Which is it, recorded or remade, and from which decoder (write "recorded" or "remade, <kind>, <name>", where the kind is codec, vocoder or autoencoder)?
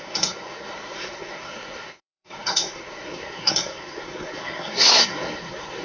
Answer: remade, codec, SNAC